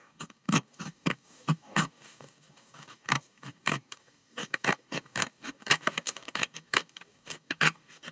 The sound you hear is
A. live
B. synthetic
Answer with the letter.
B